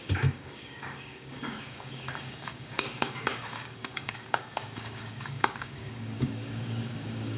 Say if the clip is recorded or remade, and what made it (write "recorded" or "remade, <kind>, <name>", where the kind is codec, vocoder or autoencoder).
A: remade, codec, DAC